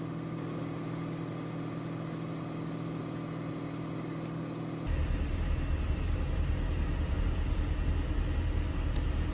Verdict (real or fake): real